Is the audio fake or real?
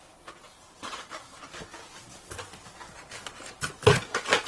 real